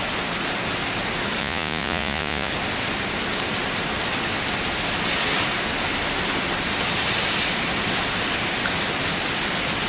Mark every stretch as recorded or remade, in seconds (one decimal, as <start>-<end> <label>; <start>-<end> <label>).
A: 0.0-1.4 recorded; 1.4-2.5 remade; 2.5-9.9 recorded

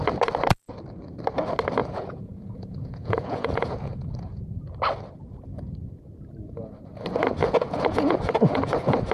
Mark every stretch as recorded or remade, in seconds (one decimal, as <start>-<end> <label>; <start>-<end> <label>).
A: 0.0-1.8 recorded; 1.8-4.1 remade; 4.1-7.4 recorded; 7.4-9.1 remade

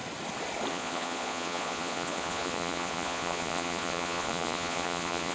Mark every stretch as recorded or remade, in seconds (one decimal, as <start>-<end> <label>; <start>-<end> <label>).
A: 0.0-0.7 recorded; 0.7-5.3 remade

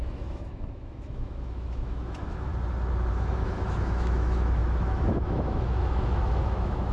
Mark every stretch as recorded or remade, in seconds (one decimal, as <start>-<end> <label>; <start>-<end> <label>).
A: 0.0-2.5 remade; 2.5-3.1 recorded; 3.1-6.9 remade

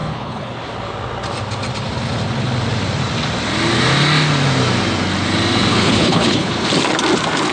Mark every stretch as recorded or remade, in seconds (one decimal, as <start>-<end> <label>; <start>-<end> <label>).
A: 0.0-0.5 remade; 0.5-5.7 recorded; 5.7-6.7 remade; 6.7-7.5 recorded

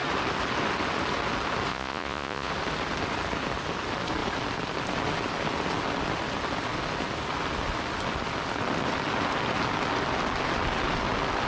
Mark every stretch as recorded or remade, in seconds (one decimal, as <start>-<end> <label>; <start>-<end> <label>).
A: 0.0-1.7 recorded; 1.7-2.5 remade; 2.5-11.5 recorded

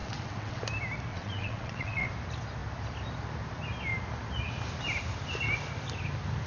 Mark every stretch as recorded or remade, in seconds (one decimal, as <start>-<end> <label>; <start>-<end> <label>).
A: 0.0-0.6 remade; 0.6-1.1 recorded; 1.1-2.1 remade; 2.1-6.5 recorded

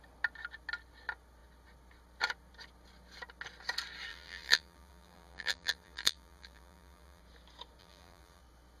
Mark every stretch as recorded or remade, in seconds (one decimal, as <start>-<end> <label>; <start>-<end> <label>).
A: 0.0-4.1 recorded; 4.1-7.2 remade; 7.2-7.8 recorded; 7.8-8.4 remade; 8.4-8.8 recorded